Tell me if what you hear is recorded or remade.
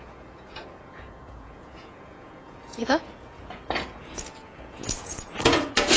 remade